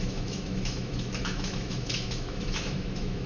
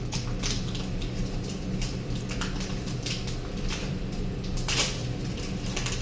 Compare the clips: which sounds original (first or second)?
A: second